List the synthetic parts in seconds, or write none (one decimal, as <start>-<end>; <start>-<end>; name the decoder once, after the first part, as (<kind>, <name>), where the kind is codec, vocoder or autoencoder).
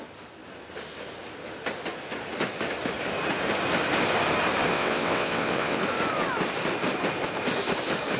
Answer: 4.7-5.8 (vocoder, WaveNeXt)